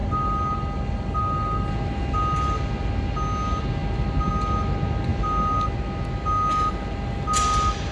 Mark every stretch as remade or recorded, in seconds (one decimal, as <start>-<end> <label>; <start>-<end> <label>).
0.0-7.9 recorded